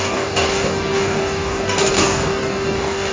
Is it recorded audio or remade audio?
remade